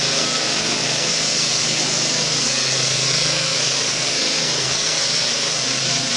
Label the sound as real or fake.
fake